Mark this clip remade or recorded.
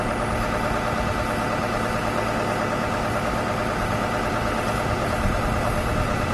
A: recorded